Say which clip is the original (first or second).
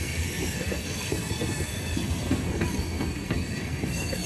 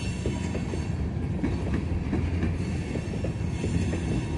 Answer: second